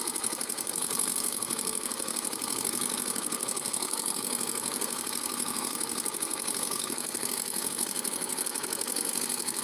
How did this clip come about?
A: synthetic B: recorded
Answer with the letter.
A